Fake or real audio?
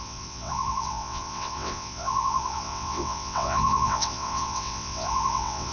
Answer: fake